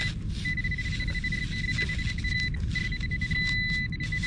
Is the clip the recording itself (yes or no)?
yes